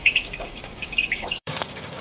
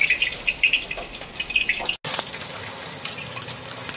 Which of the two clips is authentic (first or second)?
second